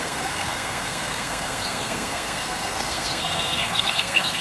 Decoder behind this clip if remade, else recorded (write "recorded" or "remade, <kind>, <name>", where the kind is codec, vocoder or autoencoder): remade, codec, SNAC